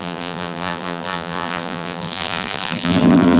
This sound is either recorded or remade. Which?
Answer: remade